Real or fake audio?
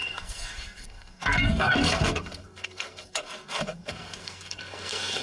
fake